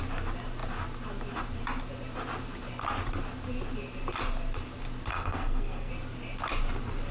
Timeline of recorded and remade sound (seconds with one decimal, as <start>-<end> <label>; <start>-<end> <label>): 0.0-5.1 recorded; 5.1-5.9 remade; 5.9-7.1 recorded